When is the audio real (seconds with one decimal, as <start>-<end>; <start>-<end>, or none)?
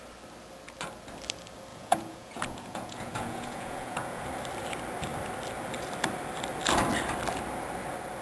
0.0-1.7; 4.2-8.2